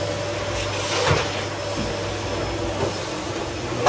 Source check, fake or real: real